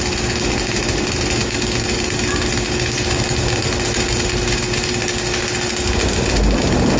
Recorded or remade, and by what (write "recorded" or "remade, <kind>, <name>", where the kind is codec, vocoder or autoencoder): recorded